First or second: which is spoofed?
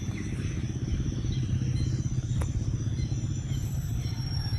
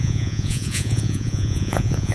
second